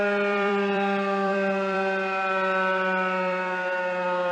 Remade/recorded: remade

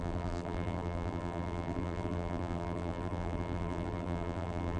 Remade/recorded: remade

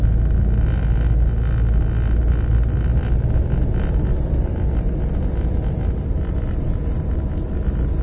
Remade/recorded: recorded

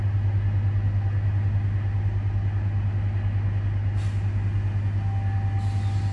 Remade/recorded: recorded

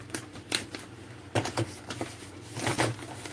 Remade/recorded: remade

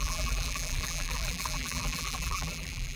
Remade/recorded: remade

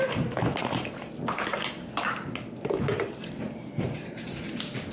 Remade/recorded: remade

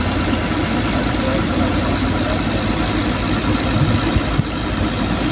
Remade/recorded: recorded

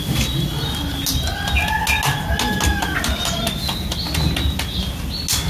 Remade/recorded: recorded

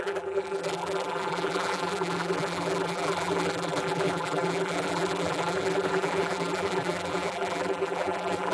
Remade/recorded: remade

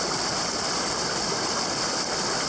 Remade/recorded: recorded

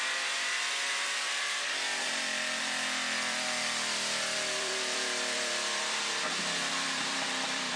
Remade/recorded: remade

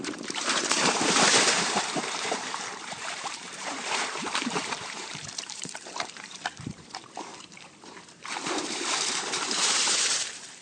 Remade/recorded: remade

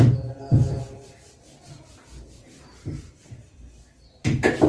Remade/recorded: remade